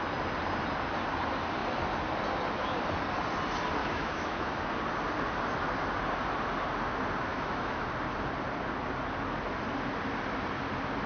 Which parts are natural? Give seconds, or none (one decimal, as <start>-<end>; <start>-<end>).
0.0-3.8; 4.5-7.3; 7.9-11.1